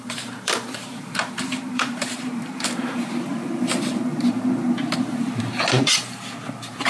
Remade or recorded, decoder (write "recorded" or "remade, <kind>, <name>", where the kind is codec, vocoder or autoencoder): remade, vocoder, BigVGAN v2